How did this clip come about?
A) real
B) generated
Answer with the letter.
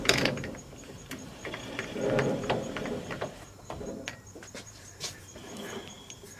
B